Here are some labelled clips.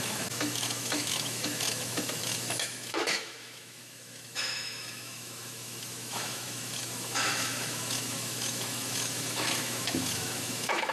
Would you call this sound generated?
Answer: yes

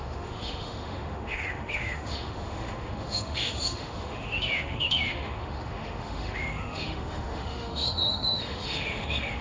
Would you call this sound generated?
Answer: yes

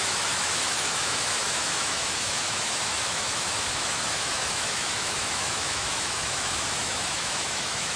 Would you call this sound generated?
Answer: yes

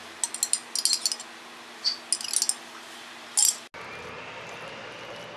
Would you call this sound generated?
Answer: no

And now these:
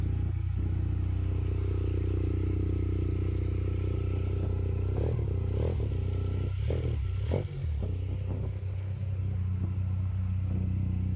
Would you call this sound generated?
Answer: no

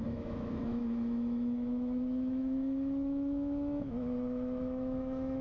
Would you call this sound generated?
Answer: yes